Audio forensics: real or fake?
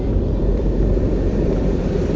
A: fake